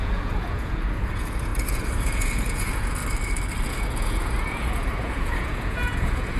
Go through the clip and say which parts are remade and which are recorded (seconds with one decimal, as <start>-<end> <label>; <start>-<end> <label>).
0.0-3.0 remade; 3.0-3.7 recorded; 3.7-6.4 remade